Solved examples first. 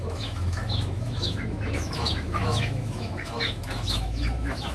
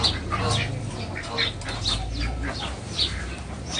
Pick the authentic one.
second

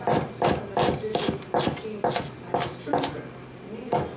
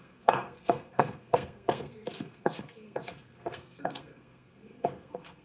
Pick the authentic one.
first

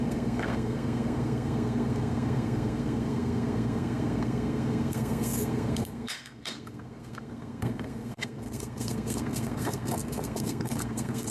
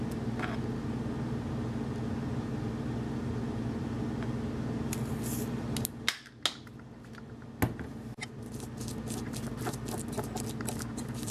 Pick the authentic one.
second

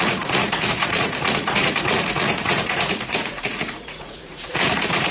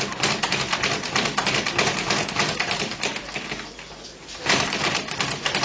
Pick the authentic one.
second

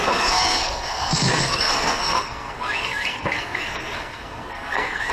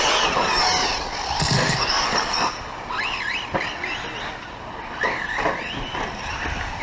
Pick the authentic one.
second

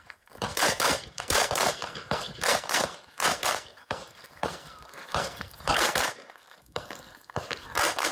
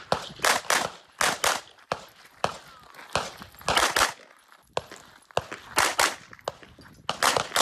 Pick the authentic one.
second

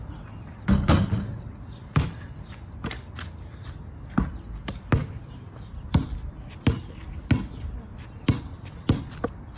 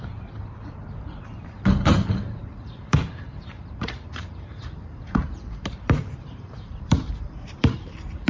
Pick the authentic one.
first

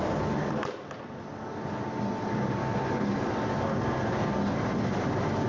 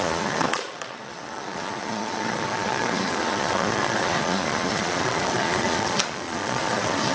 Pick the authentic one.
first